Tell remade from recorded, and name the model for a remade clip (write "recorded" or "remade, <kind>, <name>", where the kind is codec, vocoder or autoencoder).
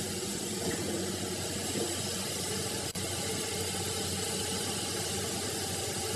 remade, vocoder, Vocos